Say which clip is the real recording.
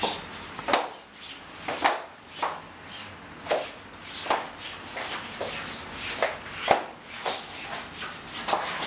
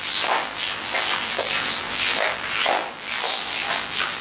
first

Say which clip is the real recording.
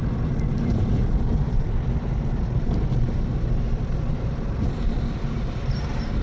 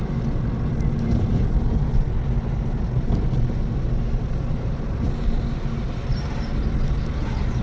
second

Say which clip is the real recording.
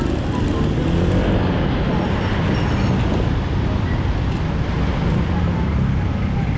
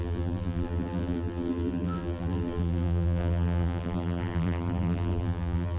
first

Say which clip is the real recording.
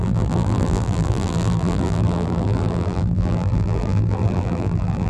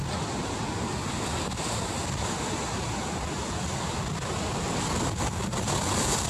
second